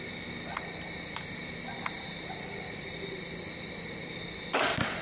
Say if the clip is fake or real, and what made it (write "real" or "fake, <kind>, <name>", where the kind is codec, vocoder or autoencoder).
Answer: real